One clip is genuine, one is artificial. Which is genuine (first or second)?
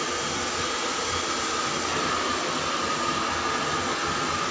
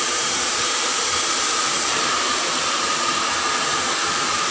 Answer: first